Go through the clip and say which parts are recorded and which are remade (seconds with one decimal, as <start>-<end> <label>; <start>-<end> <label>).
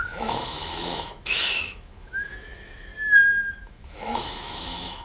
0.0-2.9 remade; 2.9-3.6 recorded; 3.6-5.0 remade